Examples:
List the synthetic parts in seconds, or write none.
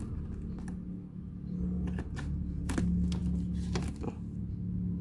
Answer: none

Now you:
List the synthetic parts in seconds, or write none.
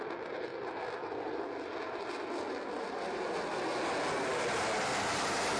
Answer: none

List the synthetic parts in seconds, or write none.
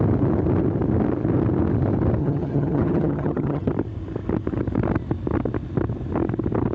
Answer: 2.2-3.7 (vocoder, HiFi-GAN)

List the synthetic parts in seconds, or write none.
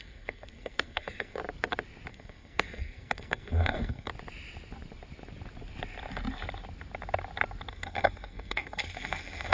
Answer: 0.0-1.4 (codec, SNAC); 2.1-4.1; 7.7-9.5